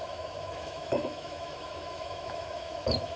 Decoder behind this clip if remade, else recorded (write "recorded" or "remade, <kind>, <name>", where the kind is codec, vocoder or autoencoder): remade, autoencoder, DAC-VAE